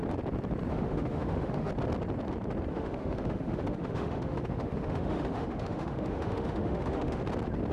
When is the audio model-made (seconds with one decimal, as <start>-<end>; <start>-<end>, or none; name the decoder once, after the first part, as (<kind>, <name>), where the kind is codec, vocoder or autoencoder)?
0.7-1.7 (autoencoder, DAC-VAE); 2.7-7.2